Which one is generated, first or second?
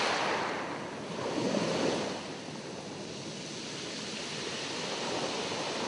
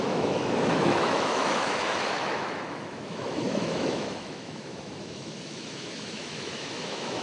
second